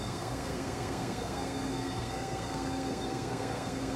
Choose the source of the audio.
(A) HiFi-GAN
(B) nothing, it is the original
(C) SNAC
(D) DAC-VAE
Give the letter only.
C